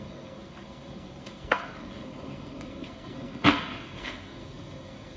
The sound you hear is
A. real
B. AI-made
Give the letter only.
B